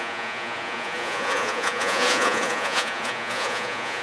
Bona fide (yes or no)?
no